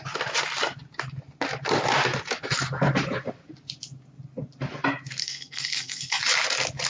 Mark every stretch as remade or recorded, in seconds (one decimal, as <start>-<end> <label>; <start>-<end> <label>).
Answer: 0.0-5.2 recorded; 5.2-6.2 remade; 6.2-6.9 recorded